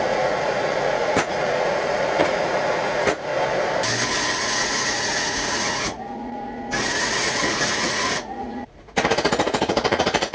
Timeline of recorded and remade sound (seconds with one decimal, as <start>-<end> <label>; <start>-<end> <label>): 0.0-3.3 remade; 3.3-4.4 recorded; 4.4-10.3 remade